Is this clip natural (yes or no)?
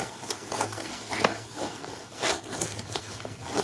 no